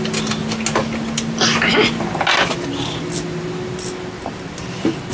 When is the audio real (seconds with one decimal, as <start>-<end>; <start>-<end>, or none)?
0.0-5.1

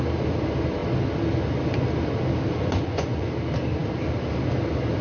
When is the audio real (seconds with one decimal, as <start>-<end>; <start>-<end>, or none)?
0.0-2.5; 3.3-5.0